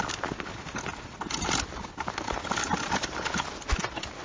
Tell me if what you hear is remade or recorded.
recorded